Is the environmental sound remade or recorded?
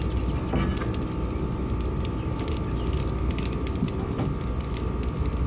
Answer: recorded